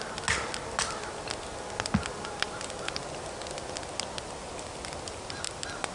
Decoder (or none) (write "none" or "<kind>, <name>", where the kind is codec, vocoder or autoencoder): none